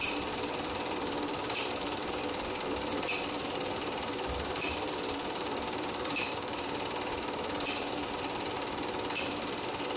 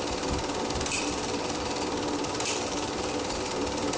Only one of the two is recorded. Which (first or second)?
second